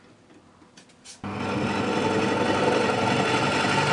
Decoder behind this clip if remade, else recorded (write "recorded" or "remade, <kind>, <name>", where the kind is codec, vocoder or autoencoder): recorded